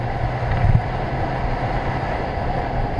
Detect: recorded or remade recorded